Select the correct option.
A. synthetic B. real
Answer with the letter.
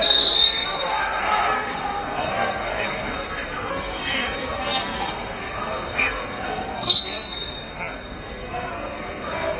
A